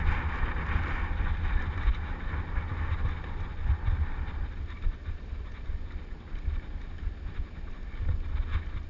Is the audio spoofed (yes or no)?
no